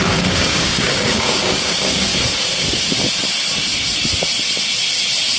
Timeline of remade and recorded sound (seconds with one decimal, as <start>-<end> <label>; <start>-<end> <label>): 0.0-2.1 remade; 2.1-5.4 recorded